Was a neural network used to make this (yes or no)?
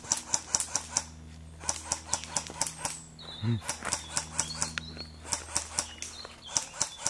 no